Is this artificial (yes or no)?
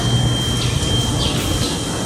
no